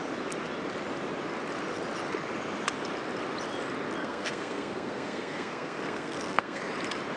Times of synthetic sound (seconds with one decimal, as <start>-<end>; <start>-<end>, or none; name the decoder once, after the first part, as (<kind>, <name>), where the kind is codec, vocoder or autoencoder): 4.0-6.6 (codec, SNAC)